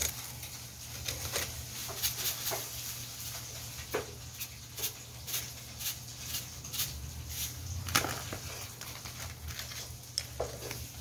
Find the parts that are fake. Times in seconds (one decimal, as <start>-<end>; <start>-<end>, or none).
none